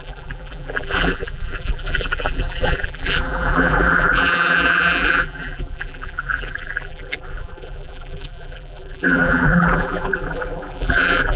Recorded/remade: remade